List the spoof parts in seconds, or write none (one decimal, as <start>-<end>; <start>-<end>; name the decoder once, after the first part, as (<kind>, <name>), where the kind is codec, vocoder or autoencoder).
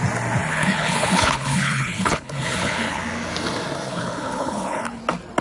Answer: 0.5-3.0 (codec, HILCodec); 3.9-5.0